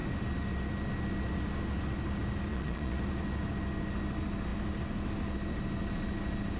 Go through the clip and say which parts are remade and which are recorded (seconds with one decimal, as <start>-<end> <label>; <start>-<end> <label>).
0.0-2.5 recorded; 2.5-3.0 remade; 3.0-6.6 recorded